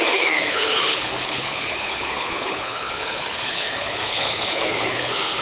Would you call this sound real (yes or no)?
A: no